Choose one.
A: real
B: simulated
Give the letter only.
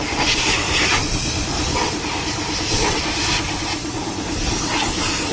A